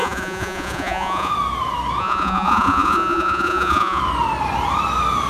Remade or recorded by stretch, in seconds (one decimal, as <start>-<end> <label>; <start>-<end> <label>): 0.0-1.3 remade; 1.3-2.0 recorded; 2.0-4.0 remade; 4.0-5.3 recorded